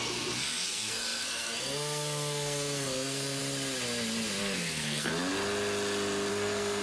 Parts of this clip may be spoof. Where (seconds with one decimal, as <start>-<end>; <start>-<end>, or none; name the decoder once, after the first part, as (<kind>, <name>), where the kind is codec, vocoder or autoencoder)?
0.0-3.4 (codec, SNAC); 4.4-5.1; 6.3-6.8